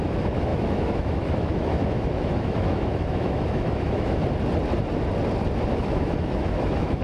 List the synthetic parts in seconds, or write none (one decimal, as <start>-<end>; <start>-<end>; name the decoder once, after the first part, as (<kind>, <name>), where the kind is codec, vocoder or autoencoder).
0.0-4.2 (autoencoder, DAC-VAE); 5.7-7.0